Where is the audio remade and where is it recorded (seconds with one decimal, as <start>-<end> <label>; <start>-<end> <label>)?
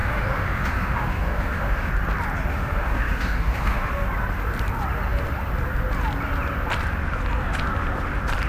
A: 0.0-1.9 remade; 1.9-2.5 recorded; 2.5-3.9 remade; 3.9-8.5 recorded